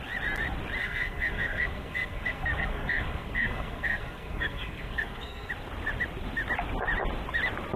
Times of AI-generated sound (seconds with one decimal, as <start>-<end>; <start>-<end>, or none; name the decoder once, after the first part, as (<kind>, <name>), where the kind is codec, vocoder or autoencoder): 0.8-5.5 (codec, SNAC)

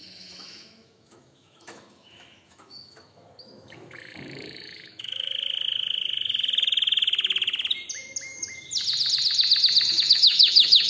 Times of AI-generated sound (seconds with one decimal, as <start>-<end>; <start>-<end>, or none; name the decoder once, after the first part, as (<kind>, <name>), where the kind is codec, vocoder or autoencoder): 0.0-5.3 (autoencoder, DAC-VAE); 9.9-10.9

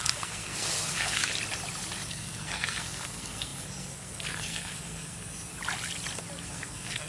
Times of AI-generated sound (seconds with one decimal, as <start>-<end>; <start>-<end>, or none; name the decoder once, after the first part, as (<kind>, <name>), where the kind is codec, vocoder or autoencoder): 0.0-1.3 (codec, SNAC); 2.1-5.5; 6.4-7.1

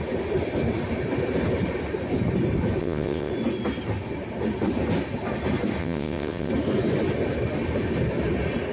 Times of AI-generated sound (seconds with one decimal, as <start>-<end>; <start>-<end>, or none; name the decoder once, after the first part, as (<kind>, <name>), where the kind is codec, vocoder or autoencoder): 2.8-3.3 (vocoder, WaveNeXt); 5.8-6.5

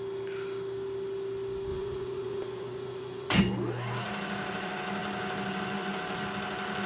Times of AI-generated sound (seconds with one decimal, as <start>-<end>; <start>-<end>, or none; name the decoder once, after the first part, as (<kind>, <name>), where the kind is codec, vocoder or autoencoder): 1.7-3.4 (vocoder, Vocos)